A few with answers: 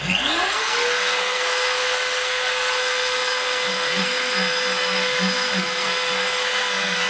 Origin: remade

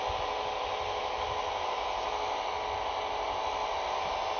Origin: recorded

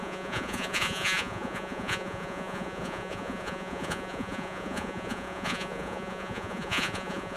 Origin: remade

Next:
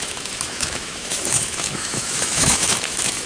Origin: remade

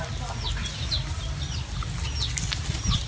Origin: recorded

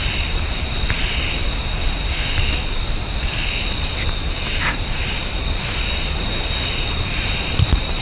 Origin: recorded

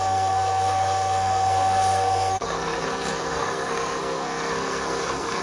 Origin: remade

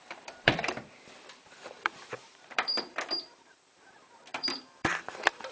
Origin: remade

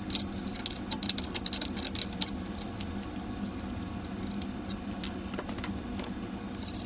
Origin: recorded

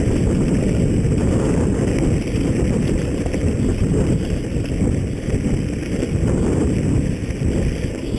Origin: remade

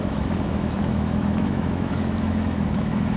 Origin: remade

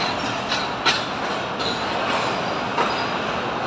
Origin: recorded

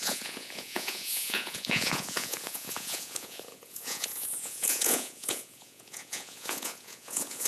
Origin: remade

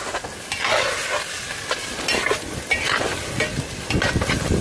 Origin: recorded